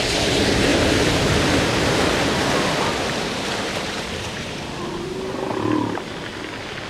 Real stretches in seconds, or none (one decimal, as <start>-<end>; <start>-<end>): 0.0-0.7; 4.8-5.5; 6.3-6.9